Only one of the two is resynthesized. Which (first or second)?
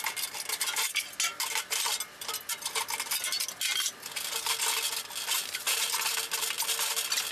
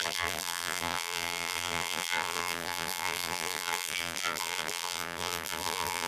second